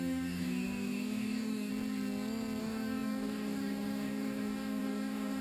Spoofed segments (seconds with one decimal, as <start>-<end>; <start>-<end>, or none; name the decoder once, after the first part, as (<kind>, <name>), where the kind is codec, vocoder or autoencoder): 0.0-1.7 (codec, DAC); 2.6-5.4